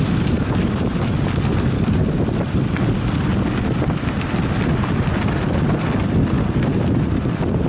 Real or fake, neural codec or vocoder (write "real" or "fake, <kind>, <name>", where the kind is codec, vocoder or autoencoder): real